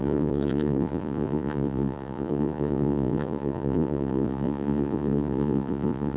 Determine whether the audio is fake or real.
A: fake